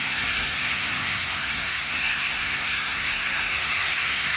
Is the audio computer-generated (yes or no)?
yes